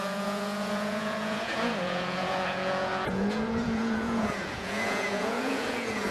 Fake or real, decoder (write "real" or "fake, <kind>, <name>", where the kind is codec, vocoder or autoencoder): fake, vocoder, Vocos